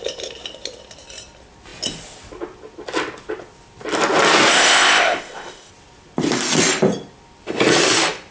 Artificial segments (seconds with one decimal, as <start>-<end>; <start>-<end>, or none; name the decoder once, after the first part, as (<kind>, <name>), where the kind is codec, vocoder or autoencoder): 4.5-5.7 (codec, ZipCodec)